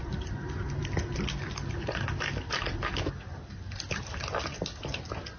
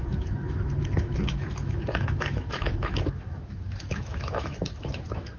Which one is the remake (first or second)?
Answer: second